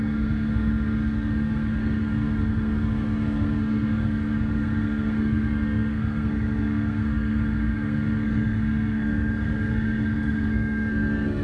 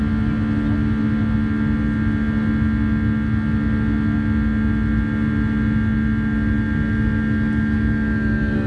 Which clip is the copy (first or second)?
first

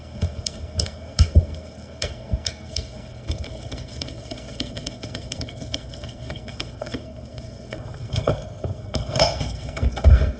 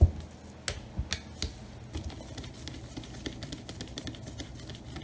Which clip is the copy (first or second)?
first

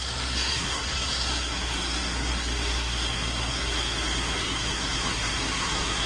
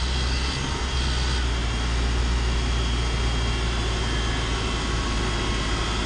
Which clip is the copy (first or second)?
first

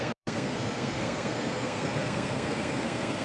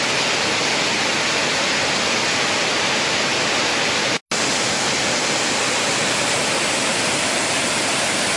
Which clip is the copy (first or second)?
first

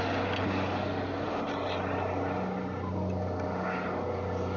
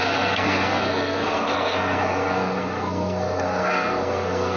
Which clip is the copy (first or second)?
second